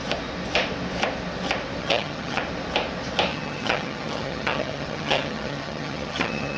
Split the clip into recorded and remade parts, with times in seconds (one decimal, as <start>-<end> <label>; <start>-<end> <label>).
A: 0.0-1.8 recorded; 1.8-2.4 remade; 2.4-3.3 recorded; 3.3-6.6 remade